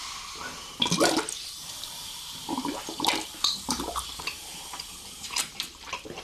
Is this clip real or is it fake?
fake